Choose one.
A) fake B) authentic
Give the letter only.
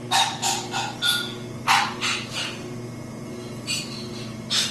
B